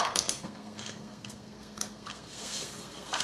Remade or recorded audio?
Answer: remade